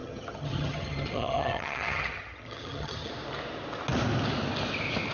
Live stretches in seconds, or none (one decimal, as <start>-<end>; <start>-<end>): 3.1-5.1